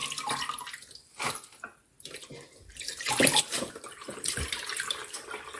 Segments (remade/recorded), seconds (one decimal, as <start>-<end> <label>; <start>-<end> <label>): 0.0-3.4 recorded; 3.4-5.6 remade